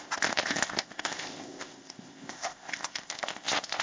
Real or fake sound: fake